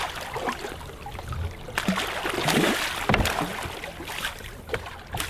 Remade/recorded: recorded